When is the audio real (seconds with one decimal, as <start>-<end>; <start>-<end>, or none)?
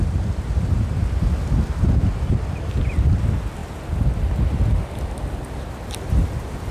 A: 0.0-6.7